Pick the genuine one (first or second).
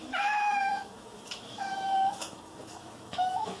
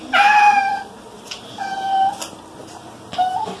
second